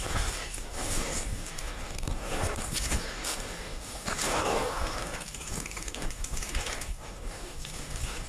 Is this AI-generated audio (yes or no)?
yes